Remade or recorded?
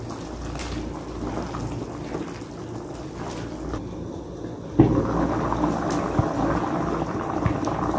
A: recorded